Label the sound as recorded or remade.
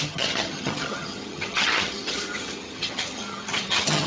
remade